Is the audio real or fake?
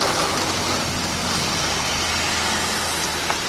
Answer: real